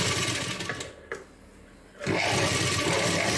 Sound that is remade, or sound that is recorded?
recorded